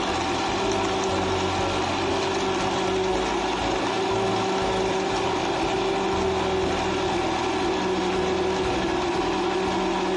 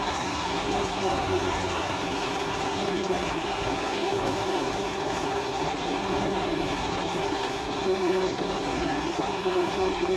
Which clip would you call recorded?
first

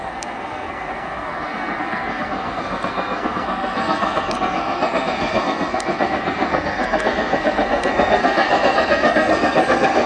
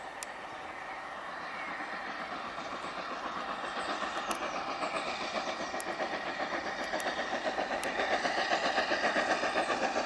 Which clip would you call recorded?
second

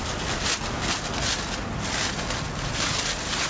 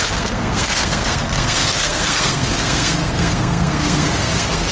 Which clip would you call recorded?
first